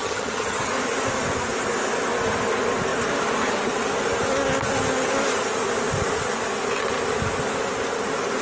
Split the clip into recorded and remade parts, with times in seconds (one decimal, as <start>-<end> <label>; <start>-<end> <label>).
0.0-0.7 remade; 0.7-8.4 recorded

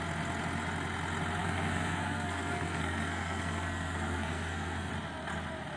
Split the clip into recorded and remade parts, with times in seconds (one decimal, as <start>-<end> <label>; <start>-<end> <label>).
0.0-1.4 recorded; 1.4-4.9 remade; 4.9-5.8 recorded